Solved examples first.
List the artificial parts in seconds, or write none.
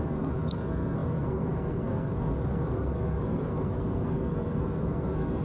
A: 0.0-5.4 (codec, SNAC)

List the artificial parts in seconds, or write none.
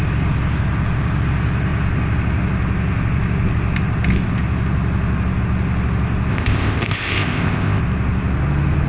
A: 6.3-7.8 (codec, ZipCodec)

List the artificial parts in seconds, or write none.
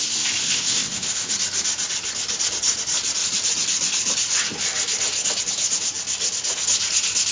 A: 0.4-1.3 (codec, ZipCodec)